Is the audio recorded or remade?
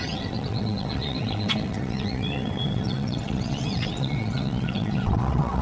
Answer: remade